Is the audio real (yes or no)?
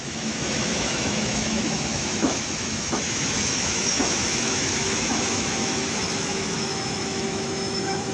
no